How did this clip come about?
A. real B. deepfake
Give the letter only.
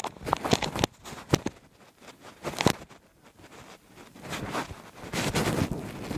A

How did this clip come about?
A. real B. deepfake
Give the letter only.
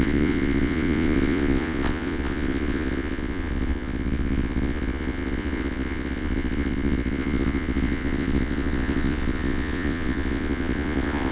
B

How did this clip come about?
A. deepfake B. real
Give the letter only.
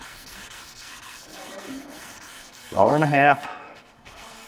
A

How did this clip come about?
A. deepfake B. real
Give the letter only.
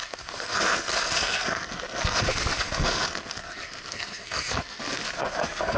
A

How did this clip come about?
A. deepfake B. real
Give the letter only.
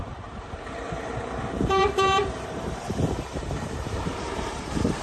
A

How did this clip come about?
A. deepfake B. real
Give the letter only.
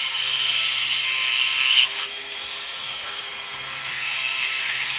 A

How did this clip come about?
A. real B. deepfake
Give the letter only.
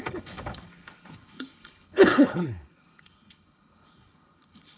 B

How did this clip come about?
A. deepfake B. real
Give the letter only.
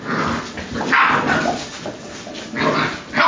B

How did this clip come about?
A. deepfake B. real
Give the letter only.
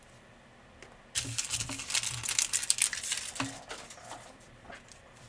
B